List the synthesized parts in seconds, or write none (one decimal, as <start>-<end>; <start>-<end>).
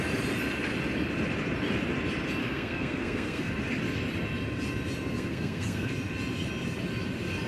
2.4-3.5; 5.1-5.9